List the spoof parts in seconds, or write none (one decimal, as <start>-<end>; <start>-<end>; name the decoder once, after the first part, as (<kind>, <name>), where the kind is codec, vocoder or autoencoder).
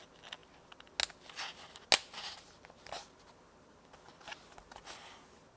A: none